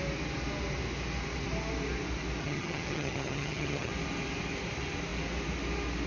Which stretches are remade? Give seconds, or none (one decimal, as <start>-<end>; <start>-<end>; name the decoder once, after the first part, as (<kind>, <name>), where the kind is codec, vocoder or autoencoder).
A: 2.4-3.9 (vocoder, HiFi-GAN)